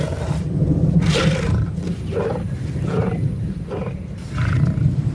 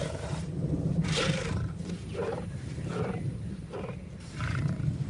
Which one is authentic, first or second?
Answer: first